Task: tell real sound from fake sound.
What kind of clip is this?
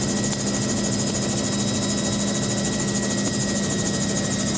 real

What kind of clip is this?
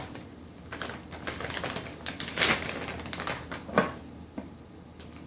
real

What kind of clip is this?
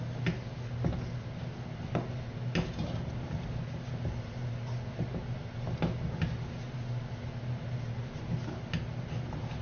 real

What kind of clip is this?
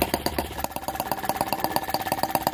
fake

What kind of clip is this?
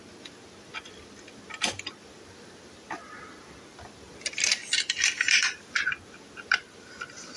real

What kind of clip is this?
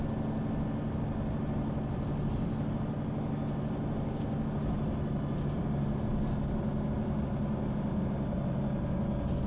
real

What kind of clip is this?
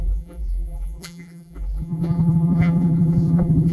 fake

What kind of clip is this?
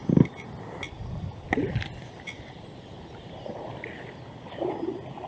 real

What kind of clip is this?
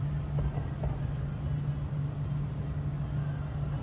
real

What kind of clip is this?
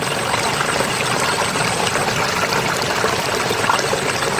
fake